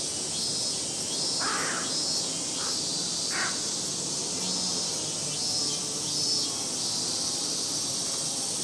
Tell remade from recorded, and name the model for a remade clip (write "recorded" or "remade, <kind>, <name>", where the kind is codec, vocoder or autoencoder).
recorded